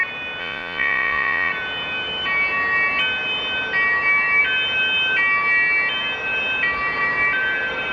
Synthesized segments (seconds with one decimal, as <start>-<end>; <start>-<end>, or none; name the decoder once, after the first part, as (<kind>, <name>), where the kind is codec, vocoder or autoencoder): 0.4-1.5 (vocoder, Vocos)